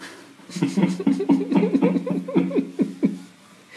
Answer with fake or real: real